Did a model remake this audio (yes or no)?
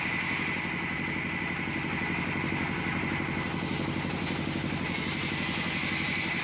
no